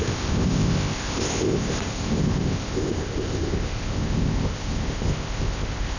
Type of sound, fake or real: fake